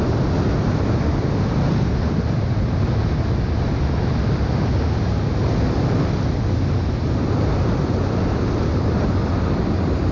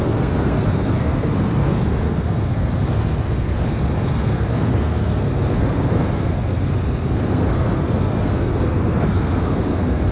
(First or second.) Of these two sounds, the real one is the first